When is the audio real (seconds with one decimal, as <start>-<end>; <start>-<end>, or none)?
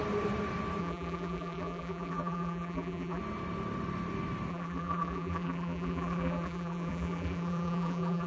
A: 0.0-0.8; 3.2-4.5